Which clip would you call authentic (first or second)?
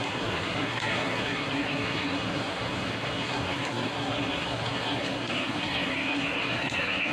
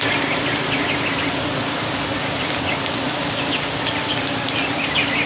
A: second